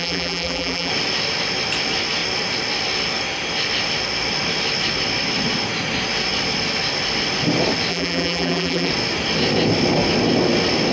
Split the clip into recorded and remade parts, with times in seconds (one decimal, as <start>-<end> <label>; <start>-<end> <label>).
0.0-0.9 remade; 0.9-7.9 recorded; 7.9-8.9 remade; 8.9-10.9 recorded